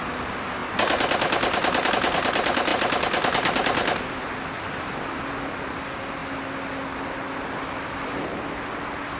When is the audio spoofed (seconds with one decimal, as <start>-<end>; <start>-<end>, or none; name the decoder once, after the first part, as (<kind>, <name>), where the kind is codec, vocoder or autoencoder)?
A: none